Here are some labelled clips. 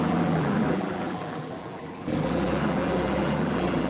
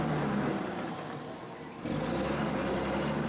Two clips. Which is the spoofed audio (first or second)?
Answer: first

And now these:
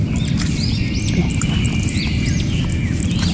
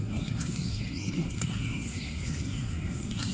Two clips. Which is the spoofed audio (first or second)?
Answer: second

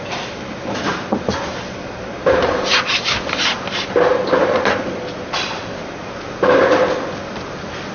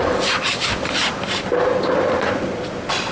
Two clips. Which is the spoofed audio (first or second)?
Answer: second